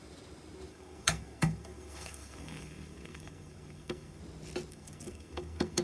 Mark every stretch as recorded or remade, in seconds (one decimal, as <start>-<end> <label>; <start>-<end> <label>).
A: 0.0-0.7 recorded; 0.7-4.2 remade; 4.2-4.7 recorded; 4.7-5.8 remade